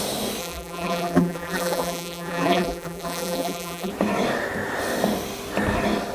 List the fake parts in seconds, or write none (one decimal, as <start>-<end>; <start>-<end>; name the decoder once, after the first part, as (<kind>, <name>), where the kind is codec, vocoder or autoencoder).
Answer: 0.4-3.9 (vocoder, BigVGAN v2)

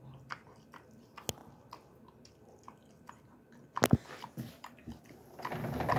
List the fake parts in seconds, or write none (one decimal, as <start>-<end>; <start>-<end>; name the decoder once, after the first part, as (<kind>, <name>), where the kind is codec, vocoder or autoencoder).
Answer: none

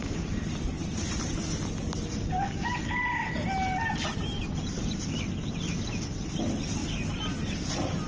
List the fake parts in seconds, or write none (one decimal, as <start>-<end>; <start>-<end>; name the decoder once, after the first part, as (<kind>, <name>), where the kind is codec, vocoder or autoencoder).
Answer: none